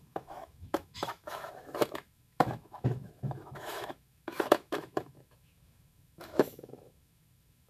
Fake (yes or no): yes